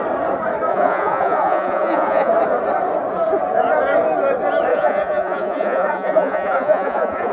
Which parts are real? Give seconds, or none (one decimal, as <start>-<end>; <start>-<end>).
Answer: 0.0-0.7; 2.3-4.7